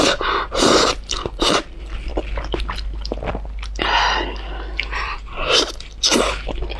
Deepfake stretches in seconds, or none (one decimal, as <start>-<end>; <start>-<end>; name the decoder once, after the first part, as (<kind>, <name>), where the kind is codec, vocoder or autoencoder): none